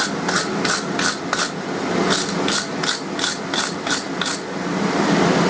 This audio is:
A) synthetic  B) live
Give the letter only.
B